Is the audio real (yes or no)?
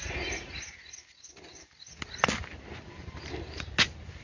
yes